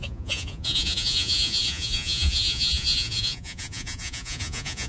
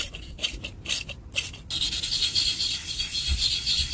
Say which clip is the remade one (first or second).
first